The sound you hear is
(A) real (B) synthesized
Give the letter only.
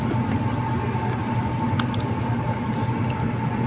A